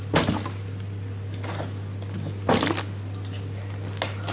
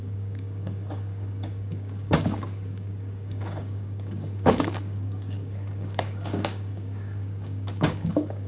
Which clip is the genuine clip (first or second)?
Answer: first